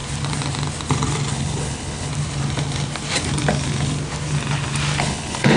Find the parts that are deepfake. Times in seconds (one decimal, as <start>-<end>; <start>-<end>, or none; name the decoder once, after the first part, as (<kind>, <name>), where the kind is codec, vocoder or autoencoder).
1.3-2.1 (codec, HILCodec); 5.0-5.6